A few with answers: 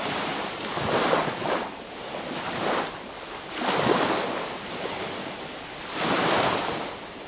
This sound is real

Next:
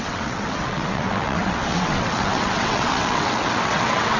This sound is fake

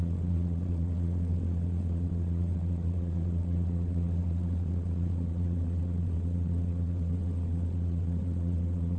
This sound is fake